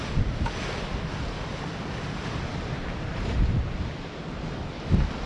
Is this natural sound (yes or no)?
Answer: yes